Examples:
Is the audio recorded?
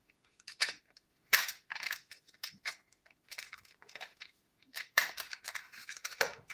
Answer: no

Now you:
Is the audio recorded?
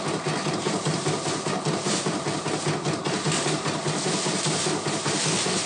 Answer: yes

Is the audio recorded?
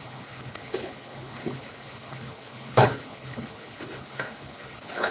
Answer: no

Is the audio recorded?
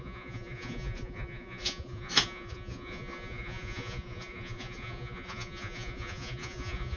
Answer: no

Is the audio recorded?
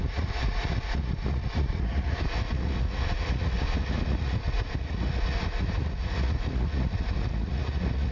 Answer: no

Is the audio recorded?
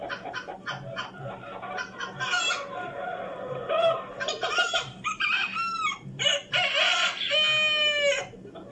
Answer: yes